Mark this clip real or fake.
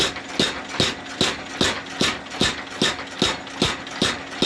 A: real